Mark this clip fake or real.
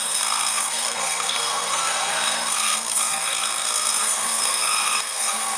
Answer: fake